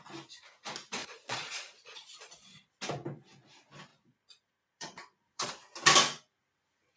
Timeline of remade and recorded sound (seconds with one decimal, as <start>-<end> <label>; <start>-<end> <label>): 0.0-1.0 recorded; 1.0-2.7 remade; 2.7-3.9 recorded; 3.9-5.5 remade; 5.5-7.0 recorded